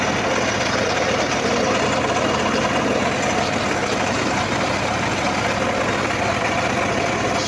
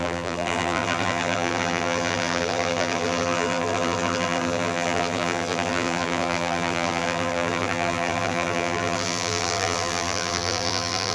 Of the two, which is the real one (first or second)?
first